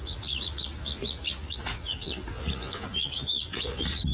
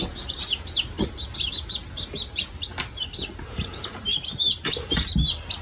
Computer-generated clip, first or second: first